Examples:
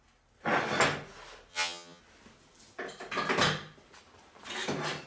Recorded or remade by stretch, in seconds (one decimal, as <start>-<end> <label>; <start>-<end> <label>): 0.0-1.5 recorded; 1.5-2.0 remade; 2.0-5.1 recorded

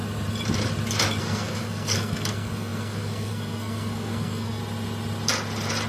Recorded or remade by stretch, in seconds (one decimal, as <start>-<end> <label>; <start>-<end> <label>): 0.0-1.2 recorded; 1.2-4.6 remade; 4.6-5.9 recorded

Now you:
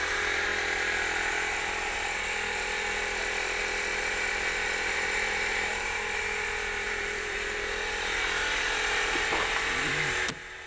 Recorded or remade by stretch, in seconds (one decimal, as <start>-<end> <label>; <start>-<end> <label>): 0.0-0.5 remade; 0.5-1.3 recorded; 1.3-2.2 remade; 2.2-4.1 recorded; 4.1-10.7 remade

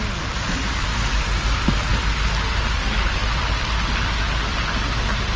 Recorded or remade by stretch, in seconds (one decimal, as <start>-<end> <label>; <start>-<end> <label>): 0.0-5.4 recorded